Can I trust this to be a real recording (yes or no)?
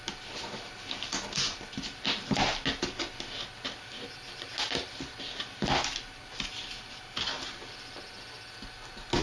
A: yes